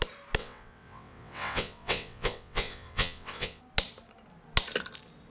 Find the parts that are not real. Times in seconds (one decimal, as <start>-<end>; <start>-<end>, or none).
0.4-3.6